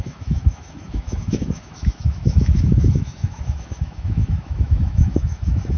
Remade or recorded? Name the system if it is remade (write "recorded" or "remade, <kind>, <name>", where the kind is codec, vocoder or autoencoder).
remade, autoencoder, DAC-VAE